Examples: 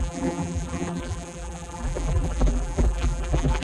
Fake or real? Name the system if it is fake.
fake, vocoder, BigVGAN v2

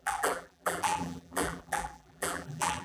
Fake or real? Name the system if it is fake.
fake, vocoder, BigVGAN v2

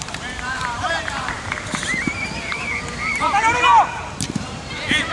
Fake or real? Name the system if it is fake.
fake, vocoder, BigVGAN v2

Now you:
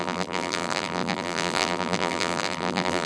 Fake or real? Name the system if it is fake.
fake, vocoder, BigVGAN v2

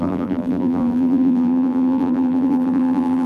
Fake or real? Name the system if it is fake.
fake, vocoder, BigVGAN v2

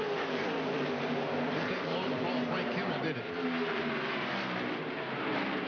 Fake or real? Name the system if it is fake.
fake, vocoder, BigVGAN v2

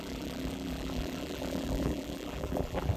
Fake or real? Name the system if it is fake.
fake, vocoder, BigVGAN v2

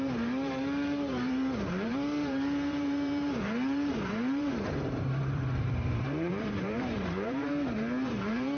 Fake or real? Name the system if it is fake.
fake, vocoder, BigVGAN v2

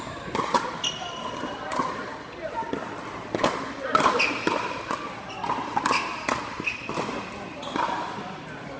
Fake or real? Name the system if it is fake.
real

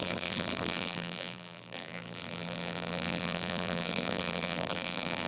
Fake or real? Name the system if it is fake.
fake, vocoder, BigVGAN v2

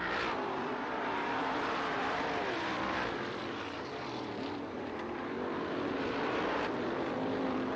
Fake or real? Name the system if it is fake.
fake, vocoder, BigVGAN v2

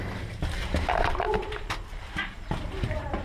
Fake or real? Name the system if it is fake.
fake, vocoder, BigVGAN v2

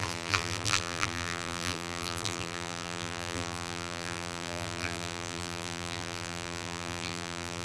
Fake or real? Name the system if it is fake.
fake, vocoder, BigVGAN v2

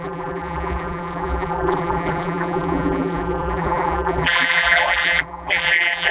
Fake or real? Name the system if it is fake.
fake, vocoder, BigVGAN v2